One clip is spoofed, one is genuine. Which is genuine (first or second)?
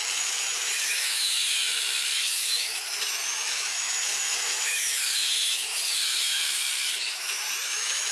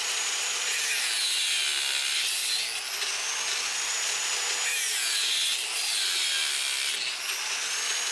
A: second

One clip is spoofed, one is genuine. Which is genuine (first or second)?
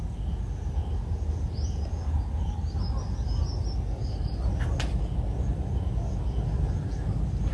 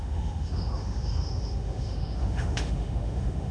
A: first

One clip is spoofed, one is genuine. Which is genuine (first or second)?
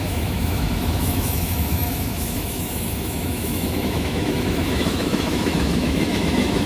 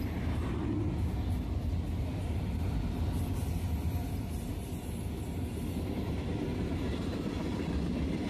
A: second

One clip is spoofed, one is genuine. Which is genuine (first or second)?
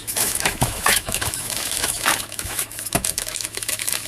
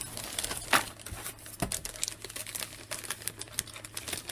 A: second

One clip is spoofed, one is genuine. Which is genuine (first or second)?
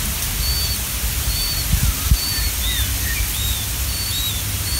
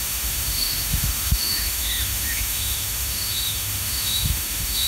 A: first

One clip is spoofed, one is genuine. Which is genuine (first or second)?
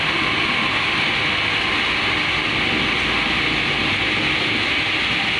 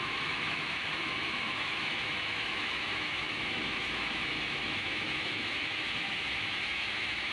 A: first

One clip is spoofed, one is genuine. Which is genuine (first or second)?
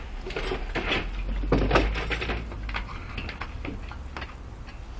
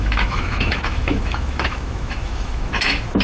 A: first